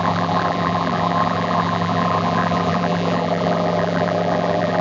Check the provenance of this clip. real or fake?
fake